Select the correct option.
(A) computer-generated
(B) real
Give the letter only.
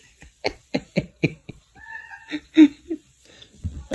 A